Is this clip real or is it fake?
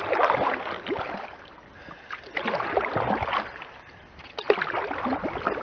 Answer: real